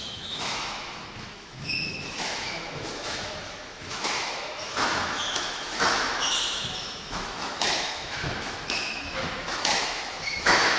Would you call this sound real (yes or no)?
no